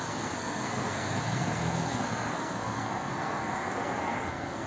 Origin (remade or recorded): remade